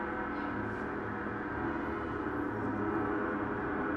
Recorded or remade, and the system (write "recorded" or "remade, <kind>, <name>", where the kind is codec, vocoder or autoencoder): recorded